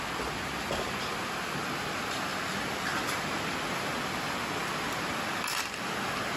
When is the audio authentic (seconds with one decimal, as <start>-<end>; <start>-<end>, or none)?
0.0-6.4